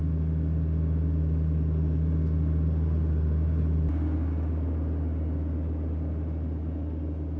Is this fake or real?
real